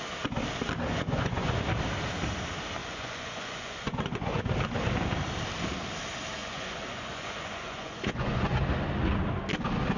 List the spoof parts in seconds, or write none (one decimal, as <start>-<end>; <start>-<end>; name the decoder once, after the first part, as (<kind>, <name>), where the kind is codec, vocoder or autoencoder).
0.9-1.6 (vocoder, Vocos); 2.8-4.4; 6.4-8.6